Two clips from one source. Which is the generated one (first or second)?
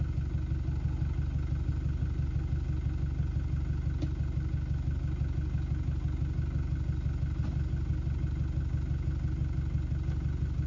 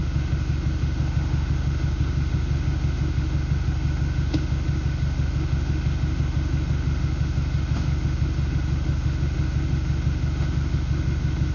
second